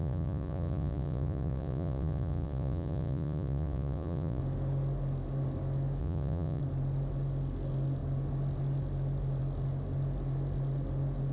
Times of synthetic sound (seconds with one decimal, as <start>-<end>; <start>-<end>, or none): 0.0-4.4; 6.0-6.6